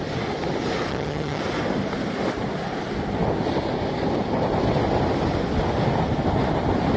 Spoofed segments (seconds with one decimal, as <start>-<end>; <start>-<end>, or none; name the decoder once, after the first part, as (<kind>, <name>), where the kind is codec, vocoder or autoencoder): 0.9-1.4 (vocoder, HiFi-GAN)